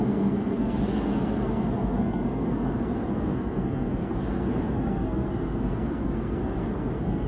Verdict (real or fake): fake